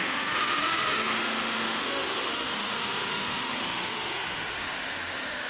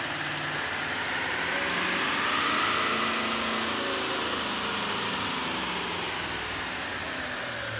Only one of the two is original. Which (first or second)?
second